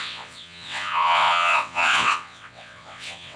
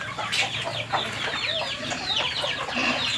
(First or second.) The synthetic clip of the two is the first